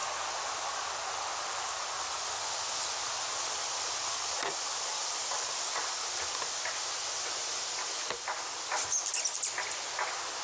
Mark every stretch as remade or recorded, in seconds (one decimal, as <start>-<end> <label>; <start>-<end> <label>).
0.0-10.4 recorded